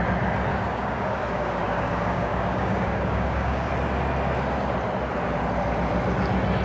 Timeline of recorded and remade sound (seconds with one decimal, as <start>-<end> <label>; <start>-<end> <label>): 0.0-0.5 recorded; 0.5-3.7 remade; 3.7-6.6 recorded